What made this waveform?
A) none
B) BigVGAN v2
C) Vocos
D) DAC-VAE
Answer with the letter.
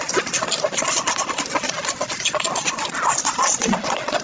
A